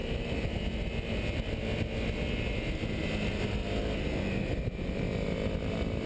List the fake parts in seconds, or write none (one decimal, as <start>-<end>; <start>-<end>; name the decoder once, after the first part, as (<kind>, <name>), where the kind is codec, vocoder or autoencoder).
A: none